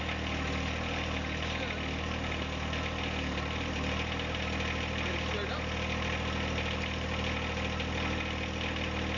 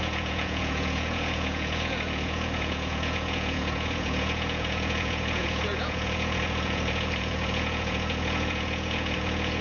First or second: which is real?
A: first